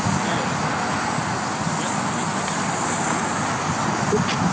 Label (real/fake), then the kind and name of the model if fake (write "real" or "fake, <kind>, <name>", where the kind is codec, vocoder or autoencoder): real